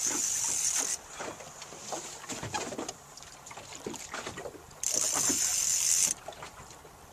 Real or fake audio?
fake